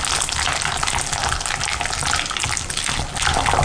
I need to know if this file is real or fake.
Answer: real